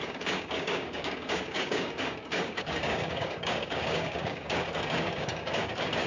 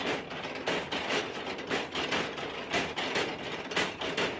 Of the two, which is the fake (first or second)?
first